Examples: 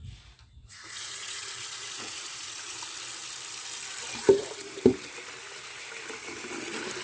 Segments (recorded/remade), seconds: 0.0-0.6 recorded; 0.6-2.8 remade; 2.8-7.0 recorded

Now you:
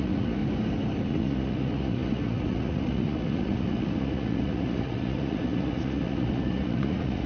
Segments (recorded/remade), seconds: 0.0-0.4 remade; 0.4-1.0 recorded; 1.0-7.3 remade

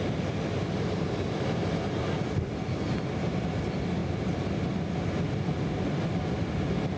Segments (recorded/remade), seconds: 0.0-7.0 recorded

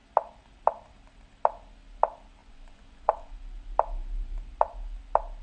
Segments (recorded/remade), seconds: 0.0-2.4 recorded; 2.4-3.3 remade; 3.3-5.4 recorded

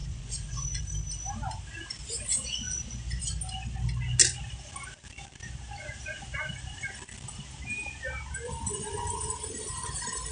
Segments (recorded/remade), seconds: 0.0-0.8 remade; 0.8-2.3 recorded; 2.3-3.2 remade; 3.2-8.6 recorded; 8.6-9.3 remade; 9.3-10.3 recorded